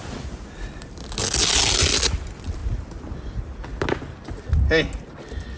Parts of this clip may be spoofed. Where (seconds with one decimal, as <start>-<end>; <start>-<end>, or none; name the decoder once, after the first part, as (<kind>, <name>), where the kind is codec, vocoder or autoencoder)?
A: none